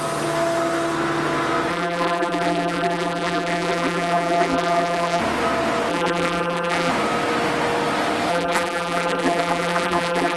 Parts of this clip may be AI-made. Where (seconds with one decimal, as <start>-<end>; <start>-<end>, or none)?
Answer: 1.7-5.2; 5.9-6.9; 8.3-10.4